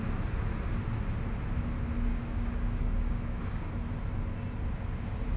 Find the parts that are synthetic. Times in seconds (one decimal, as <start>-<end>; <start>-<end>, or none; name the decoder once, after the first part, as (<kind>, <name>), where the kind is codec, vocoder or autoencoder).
2.1-3.7 (codec, DAC)